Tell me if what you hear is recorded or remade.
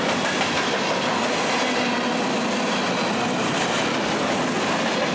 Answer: recorded